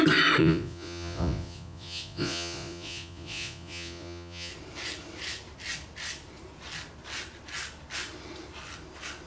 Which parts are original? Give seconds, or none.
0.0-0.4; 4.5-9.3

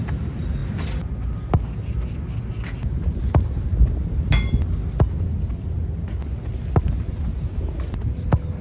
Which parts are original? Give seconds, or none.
0.0-8.6

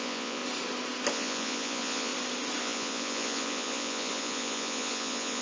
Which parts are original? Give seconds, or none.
0.4-1.1; 2.1-2.6

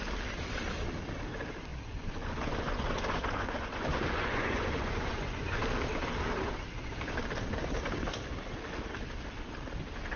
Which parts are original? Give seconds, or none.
0.0-1.7; 5.6-10.2

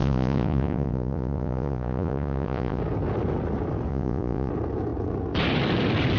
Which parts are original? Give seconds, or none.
2.8-3.9; 4.5-6.2

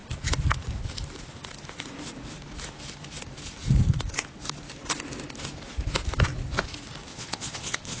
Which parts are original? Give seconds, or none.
0.0-7.1

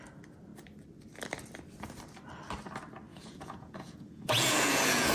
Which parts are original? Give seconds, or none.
0.0-3.1